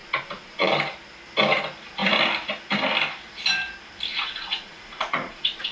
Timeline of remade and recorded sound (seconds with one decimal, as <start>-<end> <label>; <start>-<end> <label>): 0.0-0.7 remade; 0.7-4.1 recorded; 4.1-5.7 remade